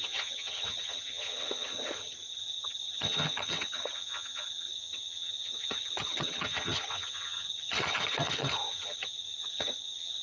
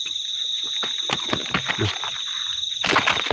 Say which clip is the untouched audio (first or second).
second